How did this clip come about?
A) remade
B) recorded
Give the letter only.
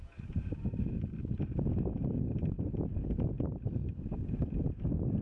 B